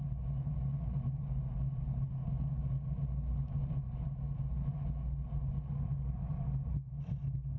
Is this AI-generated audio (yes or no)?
no